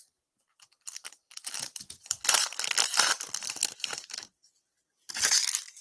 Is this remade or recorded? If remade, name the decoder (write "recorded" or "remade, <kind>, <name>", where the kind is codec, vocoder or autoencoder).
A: remade, vocoder, BigVGAN v2